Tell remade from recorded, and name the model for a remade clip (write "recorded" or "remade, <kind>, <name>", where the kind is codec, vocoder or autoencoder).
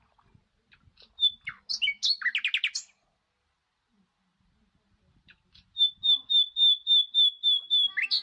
recorded